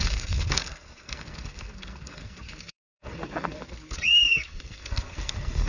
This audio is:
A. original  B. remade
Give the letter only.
B